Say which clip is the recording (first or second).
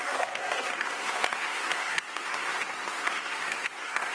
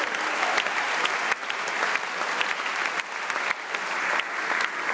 second